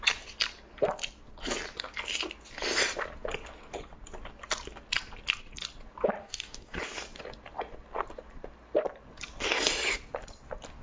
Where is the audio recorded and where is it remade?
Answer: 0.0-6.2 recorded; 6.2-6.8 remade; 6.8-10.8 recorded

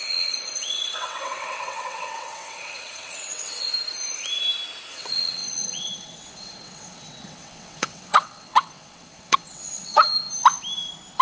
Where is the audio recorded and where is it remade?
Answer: 0.0-3.7 remade; 3.7-4.9 recorded; 4.9-10.1 remade; 10.1-11.2 recorded

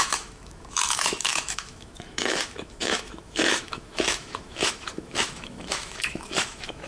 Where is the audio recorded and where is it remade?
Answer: 0.0-6.9 remade